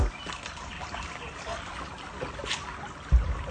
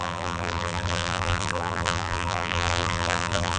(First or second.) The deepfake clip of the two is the second